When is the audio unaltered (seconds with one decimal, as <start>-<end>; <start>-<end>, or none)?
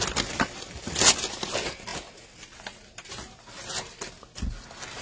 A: 0.0-5.0